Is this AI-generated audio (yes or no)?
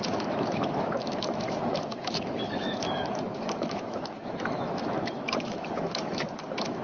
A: yes